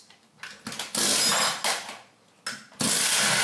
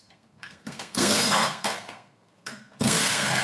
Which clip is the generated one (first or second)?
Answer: second